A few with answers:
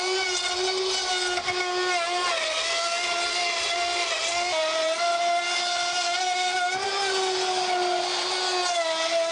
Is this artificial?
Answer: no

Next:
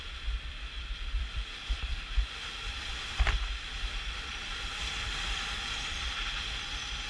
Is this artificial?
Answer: yes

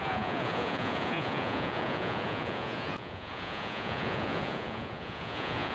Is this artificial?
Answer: yes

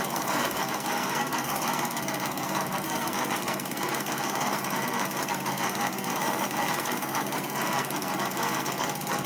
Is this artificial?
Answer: yes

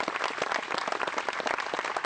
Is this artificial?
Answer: no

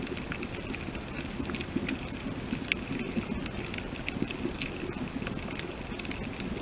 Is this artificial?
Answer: no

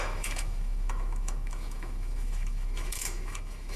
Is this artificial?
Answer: yes